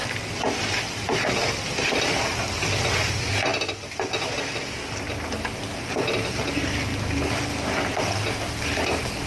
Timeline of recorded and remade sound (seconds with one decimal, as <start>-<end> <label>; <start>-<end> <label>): 0.0-3.5 recorded; 3.5-6.5 remade; 6.5-9.3 recorded